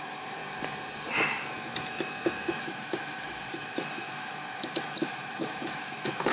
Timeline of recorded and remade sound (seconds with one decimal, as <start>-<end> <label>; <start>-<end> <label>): 0.0-0.4 remade; 0.4-1.4 recorded; 1.4-6.3 remade